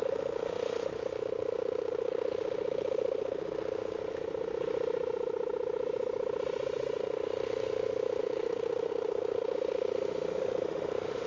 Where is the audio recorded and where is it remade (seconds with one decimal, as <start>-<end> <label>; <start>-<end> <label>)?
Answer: 0.0-4.0 remade; 4.0-7.0 recorded; 7.0-11.3 remade